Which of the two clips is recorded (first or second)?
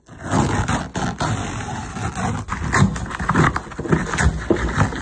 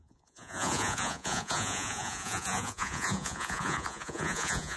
first